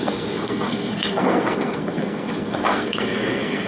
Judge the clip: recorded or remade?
remade